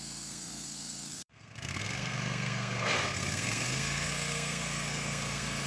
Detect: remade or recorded remade